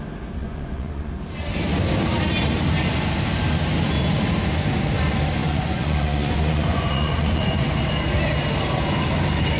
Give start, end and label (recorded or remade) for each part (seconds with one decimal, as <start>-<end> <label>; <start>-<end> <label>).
0.0-0.4 recorded; 0.4-1.1 remade; 1.1-5.4 recorded; 5.4-7.6 remade; 7.6-9.6 recorded